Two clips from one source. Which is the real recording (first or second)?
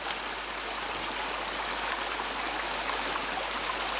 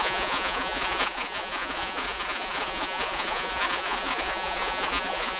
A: first